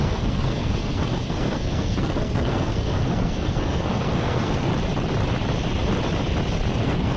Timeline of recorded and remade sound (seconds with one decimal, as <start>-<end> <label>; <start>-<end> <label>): 0.0-4.7 remade; 4.7-6.8 recorded; 6.8-7.2 remade